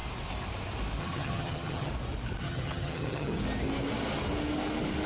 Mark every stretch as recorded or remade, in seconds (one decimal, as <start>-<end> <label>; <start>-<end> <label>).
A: 0.0-1.0 recorded; 1.0-1.9 remade; 1.9-2.4 recorded; 2.4-3.4 remade; 3.4-5.1 recorded

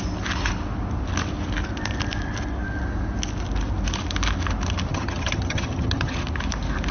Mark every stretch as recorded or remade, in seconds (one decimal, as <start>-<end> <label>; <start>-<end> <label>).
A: 0.0-4.9 recorded; 4.9-6.2 remade; 6.2-6.9 recorded

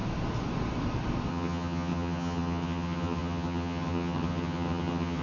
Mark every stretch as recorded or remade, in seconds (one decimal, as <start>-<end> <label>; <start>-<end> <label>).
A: 0.0-1.3 recorded; 1.3-5.2 remade

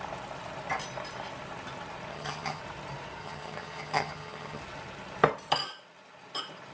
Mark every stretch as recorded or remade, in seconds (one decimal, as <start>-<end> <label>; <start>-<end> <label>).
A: 0.0-2.1 recorded; 2.1-2.6 remade; 2.6-3.2 recorded; 3.2-4.6 remade; 4.6-6.7 recorded